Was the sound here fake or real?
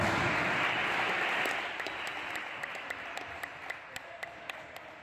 real